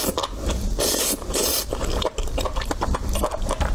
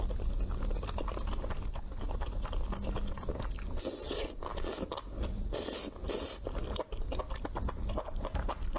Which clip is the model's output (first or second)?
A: first